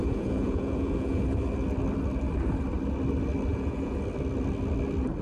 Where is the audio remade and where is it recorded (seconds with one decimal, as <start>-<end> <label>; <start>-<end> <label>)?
0.0-1.2 remade; 1.2-3.5 recorded; 3.5-4.0 remade; 4.0-5.2 recorded